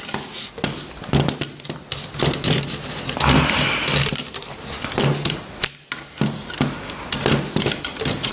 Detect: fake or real real